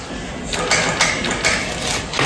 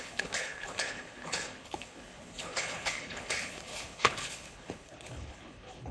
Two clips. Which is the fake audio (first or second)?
second